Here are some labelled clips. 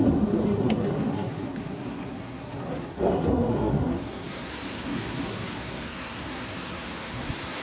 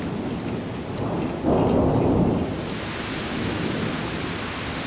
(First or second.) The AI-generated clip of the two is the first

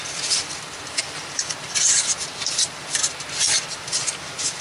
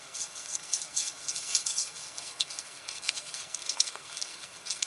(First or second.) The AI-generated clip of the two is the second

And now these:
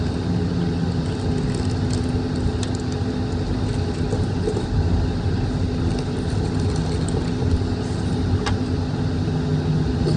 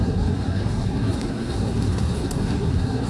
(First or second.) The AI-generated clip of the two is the second